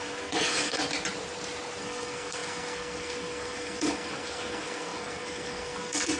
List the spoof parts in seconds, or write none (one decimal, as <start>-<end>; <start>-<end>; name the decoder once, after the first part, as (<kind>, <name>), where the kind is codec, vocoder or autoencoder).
0.0-0.8 (codec, SNAC); 1.8-6.2